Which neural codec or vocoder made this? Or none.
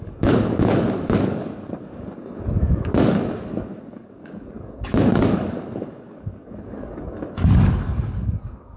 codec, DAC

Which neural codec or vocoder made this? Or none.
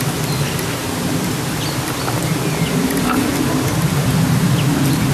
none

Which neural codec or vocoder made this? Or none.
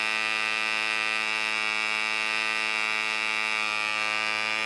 none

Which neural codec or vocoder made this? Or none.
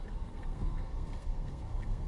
codec, SNAC